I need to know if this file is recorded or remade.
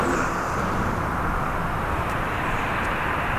remade